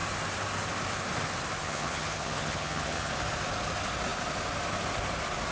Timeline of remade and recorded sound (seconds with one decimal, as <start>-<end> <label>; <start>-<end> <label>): 0.0-1.6 recorded; 1.6-3.1 remade; 3.1-5.5 recorded